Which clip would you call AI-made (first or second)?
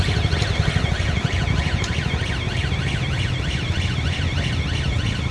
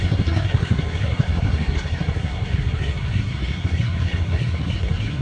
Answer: second